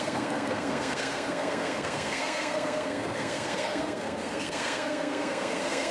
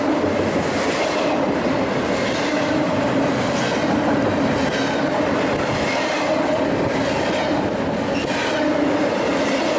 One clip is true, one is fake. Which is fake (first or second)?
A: first